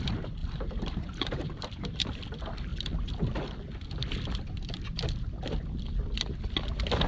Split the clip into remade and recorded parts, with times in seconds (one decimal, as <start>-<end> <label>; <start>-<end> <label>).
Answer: 0.0-0.4 recorded; 0.4-2.2 remade; 2.2-7.1 recorded